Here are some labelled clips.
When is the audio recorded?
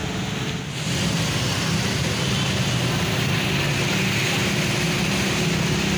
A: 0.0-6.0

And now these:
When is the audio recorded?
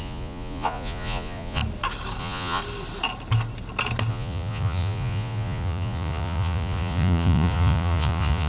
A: 1.6-2.2; 2.6-4.1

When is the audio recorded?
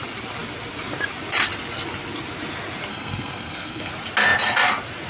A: 0.0-2.9; 3.9-5.1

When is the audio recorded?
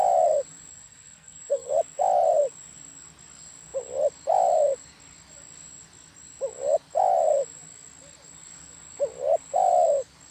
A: 0.0-0.7; 1.7-10.3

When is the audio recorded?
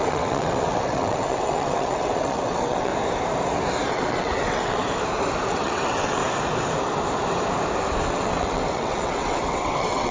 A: 2.9-3.9; 4.8-5.5; 6.2-8.1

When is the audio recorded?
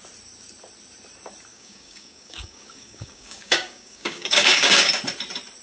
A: 0.0-1.5; 4.9-5.6